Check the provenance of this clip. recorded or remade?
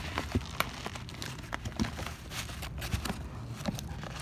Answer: recorded